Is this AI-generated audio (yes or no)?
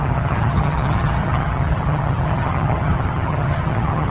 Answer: yes